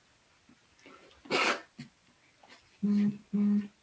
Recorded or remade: recorded